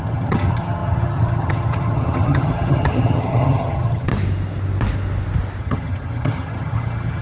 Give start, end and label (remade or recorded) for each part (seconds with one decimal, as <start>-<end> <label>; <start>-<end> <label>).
0.0-4.1 remade; 4.1-5.6 recorded; 5.6-7.2 remade